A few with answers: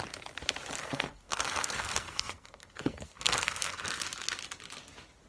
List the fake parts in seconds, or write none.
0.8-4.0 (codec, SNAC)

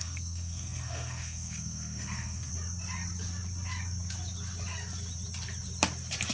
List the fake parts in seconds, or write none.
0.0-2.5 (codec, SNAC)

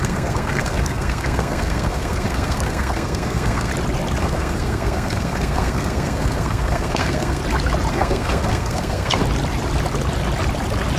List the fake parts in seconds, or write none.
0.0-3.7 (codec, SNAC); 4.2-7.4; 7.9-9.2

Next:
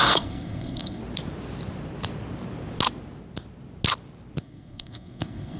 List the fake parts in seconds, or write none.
0.0-1.0 (codec, SNAC); 4.4-5.6

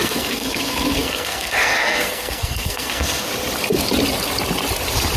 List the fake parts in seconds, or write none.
0.0-3.3 (codec, SNAC)